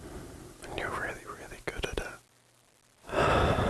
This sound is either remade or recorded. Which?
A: recorded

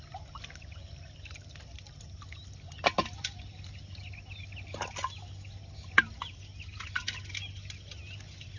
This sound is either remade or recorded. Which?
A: recorded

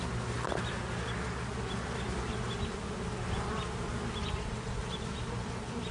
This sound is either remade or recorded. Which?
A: recorded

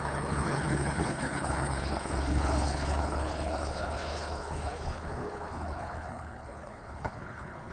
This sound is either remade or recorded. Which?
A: remade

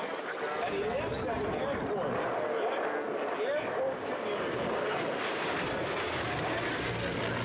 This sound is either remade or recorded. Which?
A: recorded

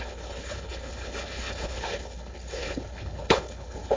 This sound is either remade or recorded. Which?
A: remade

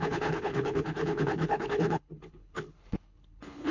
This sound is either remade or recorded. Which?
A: remade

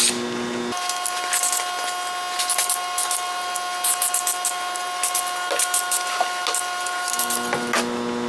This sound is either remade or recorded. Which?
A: recorded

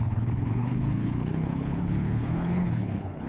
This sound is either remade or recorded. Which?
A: remade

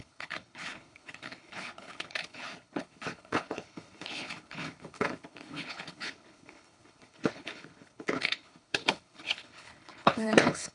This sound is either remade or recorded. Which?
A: remade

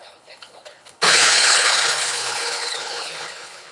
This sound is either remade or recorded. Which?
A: remade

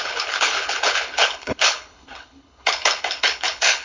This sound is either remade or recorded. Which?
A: remade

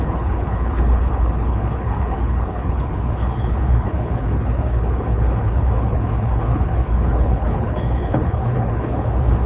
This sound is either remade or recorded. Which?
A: remade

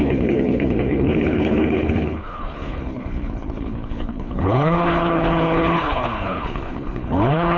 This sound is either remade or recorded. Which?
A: remade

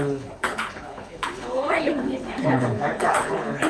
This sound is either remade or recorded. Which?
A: remade